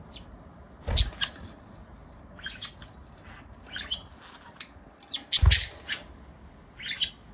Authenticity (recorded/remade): recorded